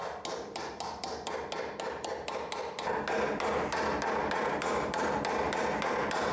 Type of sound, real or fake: real